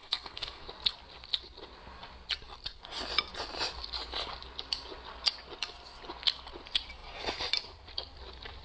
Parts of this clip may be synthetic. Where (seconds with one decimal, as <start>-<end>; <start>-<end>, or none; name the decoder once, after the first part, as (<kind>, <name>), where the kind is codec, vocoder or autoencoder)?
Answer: 0.0-0.7 (codec, SNAC)